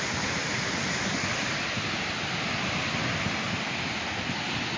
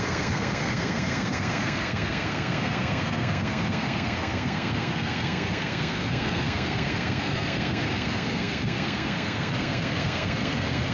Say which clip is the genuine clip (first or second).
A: first